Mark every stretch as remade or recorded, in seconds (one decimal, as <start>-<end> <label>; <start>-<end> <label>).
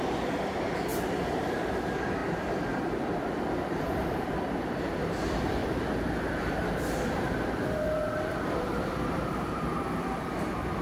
0.0-0.9 recorded; 0.9-1.8 remade; 1.8-5.6 recorded; 5.6-9.8 remade; 9.8-10.8 recorded